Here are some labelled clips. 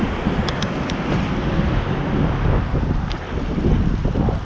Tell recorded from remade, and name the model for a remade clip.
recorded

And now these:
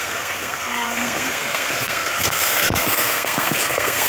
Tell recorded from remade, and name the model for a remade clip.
remade, codec, SNAC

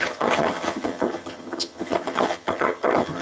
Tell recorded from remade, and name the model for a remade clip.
remade, vocoder, HiFi-GAN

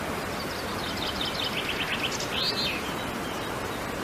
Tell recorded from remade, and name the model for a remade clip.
recorded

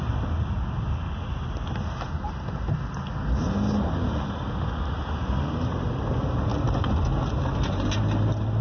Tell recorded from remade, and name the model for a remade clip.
recorded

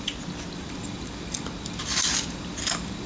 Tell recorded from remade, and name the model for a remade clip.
recorded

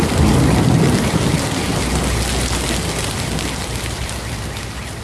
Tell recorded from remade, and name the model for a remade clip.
recorded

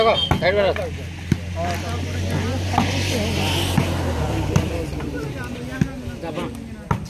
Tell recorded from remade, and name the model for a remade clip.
recorded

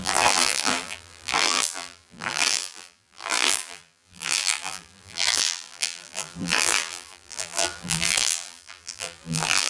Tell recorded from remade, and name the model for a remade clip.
remade, vocoder, BigVGAN v2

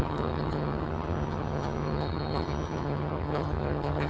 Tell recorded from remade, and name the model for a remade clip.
remade, vocoder, HiFi-GAN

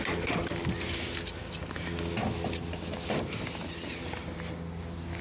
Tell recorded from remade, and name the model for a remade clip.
recorded